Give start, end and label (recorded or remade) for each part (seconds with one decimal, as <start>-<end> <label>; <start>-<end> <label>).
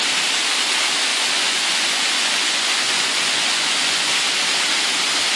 0.0-1.1 recorded; 1.1-4.3 remade; 4.3-5.4 recorded